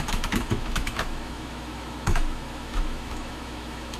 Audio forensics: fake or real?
fake